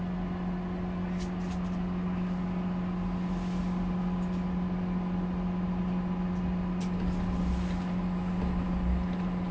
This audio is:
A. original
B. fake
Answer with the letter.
A